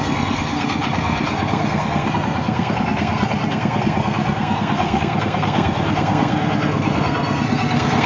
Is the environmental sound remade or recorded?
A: remade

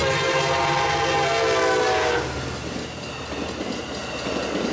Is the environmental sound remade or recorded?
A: recorded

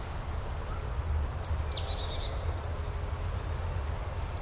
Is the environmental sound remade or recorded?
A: recorded